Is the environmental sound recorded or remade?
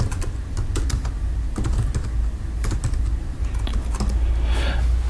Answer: recorded